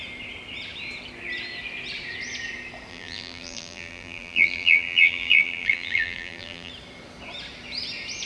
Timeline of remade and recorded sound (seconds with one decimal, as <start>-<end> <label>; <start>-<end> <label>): 0.0-2.9 recorded; 2.9-6.7 remade; 6.7-8.3 recorded